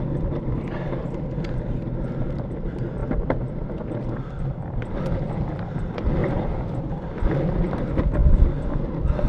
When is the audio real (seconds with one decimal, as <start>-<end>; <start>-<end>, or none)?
0.0-3.0; 3.9-6.2; 7.2-8.2; 8.8-9.3